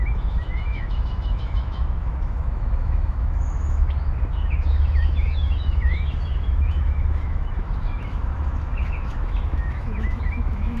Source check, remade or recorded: remade